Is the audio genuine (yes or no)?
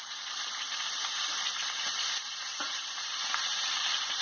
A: no